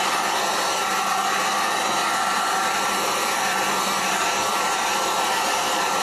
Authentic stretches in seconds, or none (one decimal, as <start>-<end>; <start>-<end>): none